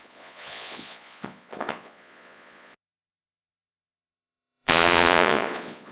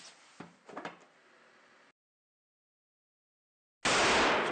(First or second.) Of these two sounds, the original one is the second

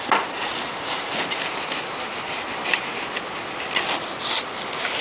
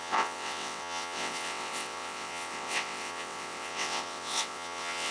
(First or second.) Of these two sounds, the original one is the first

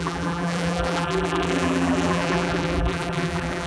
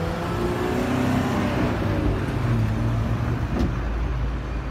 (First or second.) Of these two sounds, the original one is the second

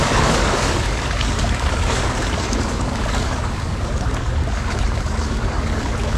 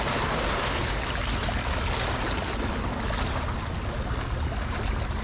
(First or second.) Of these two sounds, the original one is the second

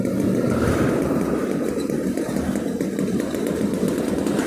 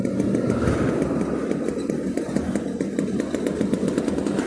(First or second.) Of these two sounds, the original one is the second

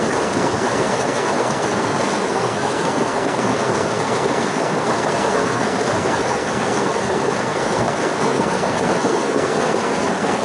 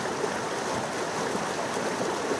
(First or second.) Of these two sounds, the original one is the second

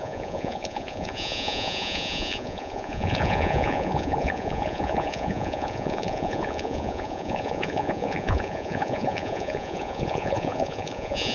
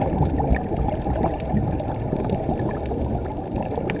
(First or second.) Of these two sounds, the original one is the second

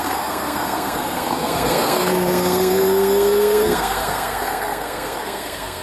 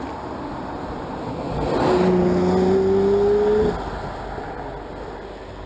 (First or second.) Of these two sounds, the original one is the second